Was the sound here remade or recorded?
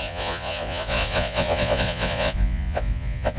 remade